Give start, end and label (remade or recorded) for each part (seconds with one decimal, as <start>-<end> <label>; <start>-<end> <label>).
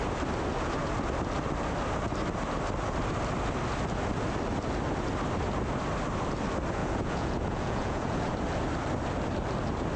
0.0-6.8 recorded; 6.8-8.2 remade; 8.2-10.0 recorded